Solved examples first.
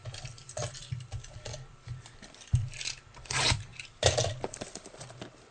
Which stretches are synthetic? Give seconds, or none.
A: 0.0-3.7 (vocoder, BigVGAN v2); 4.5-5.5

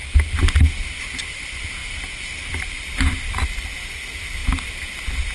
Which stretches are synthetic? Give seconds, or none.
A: 1.0-1.8 (vocoder, BigVGAN v2); 2.8-5.3